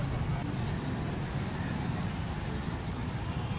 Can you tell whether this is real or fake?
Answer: real